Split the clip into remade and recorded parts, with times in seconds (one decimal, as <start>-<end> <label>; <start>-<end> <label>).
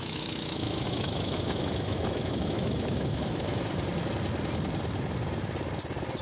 0.0-3.7 remade; 3.7-6.2 recorded